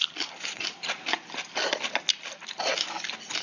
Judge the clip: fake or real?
real